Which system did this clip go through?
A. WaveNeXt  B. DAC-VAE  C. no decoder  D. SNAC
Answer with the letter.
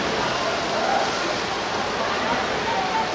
C